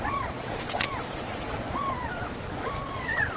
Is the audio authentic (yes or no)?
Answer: no